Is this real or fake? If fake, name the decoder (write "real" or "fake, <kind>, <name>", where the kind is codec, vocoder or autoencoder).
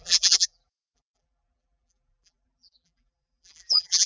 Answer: fake, vocoder, BigVGAN v2